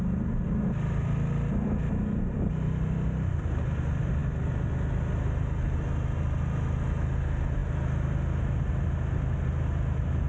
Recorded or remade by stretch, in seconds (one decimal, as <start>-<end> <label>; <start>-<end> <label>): 0.0-10.3 recorded